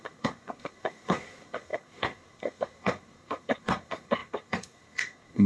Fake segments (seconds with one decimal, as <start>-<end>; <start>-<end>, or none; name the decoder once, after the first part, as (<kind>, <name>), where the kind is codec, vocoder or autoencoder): 0.0-5.5 (codec, SNAC)